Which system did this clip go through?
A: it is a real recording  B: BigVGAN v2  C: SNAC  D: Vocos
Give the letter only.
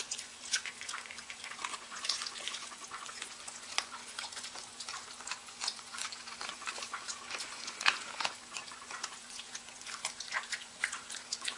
D